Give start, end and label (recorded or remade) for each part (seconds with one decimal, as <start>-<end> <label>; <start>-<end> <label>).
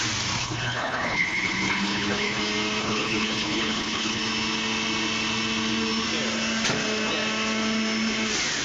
0.0-0.4 recorded; 0.4-2.4 remade; 2.4-2.8 recorded; 2.8-4.2 remade; 4.2-8.6 recorded